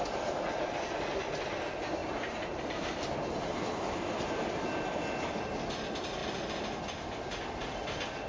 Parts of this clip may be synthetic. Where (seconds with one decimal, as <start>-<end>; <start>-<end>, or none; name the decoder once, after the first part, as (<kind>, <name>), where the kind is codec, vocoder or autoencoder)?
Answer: 2.0-3.7 (vocoder, BigVGAN v2)